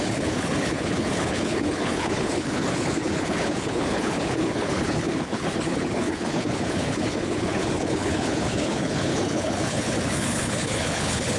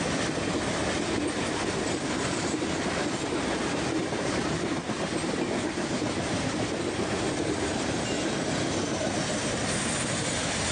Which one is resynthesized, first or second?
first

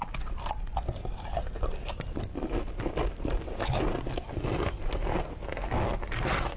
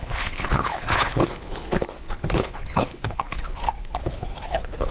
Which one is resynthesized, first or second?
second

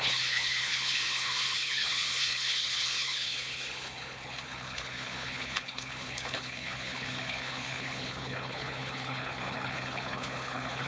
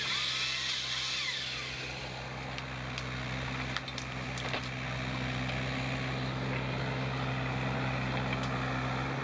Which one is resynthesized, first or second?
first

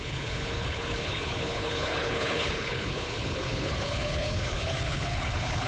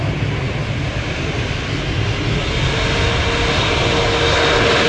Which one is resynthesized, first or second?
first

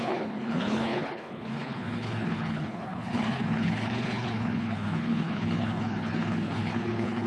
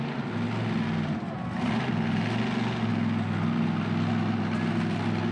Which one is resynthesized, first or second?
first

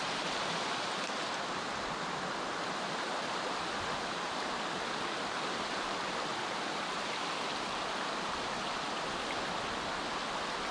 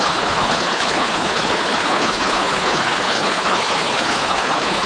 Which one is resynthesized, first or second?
second